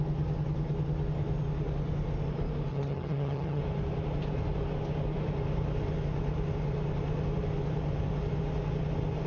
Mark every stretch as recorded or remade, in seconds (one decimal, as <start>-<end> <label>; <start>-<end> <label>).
0.0-2.7 recorded; 2.7-3.6 remade; 3.6-9.3 recorded